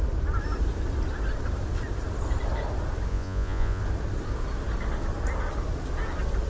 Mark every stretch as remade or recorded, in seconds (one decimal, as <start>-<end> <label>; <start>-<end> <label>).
0.0-3.1 recorded; 3.1-3.8 remade; 3.8-6.5 recorded